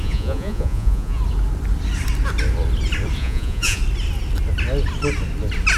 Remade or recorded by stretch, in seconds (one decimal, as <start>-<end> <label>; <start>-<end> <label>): 0.0-1.2 remade; 1.2-3.2 recorded; 3.2-3.8 remade; 3.8-5.8 recorded